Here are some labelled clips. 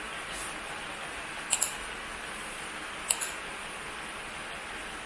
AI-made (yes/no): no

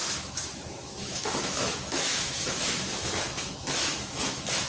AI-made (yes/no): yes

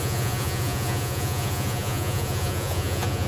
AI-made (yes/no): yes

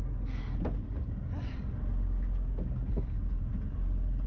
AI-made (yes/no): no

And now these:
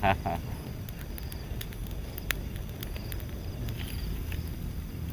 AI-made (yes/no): no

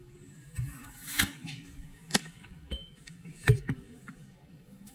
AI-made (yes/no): yes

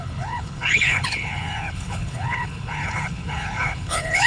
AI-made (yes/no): yes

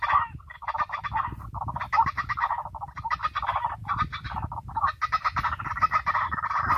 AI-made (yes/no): no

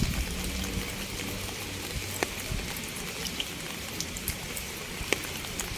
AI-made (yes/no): no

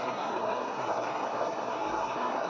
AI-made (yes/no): yes